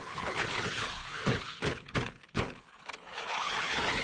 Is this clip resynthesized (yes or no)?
yes